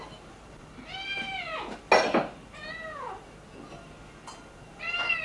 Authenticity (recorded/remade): recorded